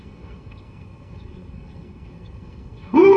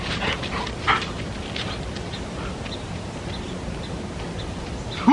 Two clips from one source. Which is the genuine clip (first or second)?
second